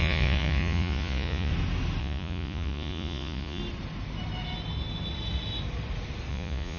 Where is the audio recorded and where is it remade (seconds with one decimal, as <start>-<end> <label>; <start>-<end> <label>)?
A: 0.0-1.5 remade; 1.5-2.0 recorded; 2.0-3.6 remade; 3.6-6.3 recorded; 6.3-6.8 remade